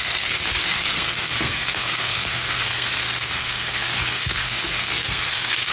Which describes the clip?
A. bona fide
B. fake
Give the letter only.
B